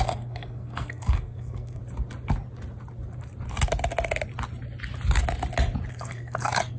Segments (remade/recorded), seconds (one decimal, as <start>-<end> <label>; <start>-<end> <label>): 0.0-1.8 remade; 1.8-5.9 recorded; 5.9-6.8 remade